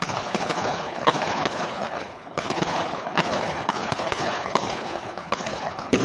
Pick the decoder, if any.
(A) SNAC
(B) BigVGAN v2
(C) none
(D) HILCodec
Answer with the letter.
D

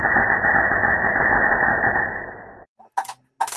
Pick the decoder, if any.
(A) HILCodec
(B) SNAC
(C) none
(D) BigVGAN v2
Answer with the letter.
C